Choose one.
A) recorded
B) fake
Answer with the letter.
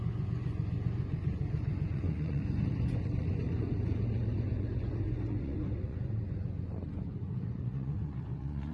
B